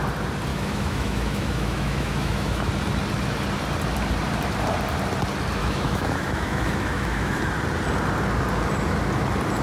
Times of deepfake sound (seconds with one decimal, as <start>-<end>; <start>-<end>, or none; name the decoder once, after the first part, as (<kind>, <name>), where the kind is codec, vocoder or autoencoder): 0.5-2.7 (autoencoder, DAC-VAE); 5.6-7.4